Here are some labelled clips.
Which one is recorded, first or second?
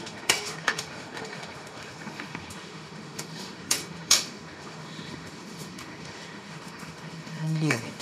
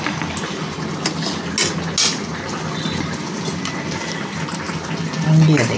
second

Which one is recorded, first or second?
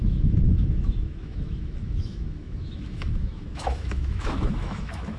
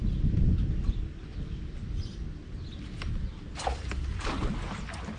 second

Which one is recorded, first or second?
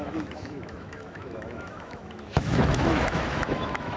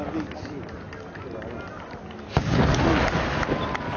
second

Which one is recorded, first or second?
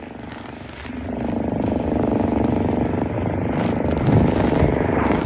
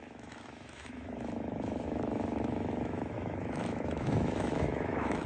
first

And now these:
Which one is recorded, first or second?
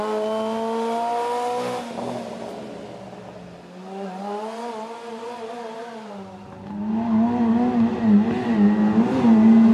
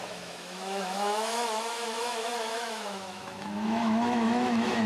first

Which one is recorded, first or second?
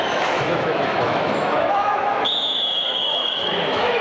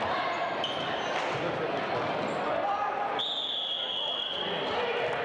second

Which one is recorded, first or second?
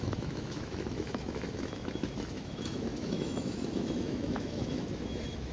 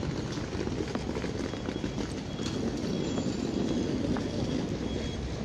second